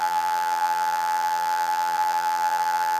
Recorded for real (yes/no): no